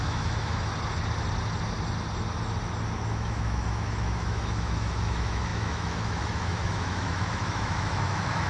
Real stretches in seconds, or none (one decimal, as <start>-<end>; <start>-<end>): 0.7-3.1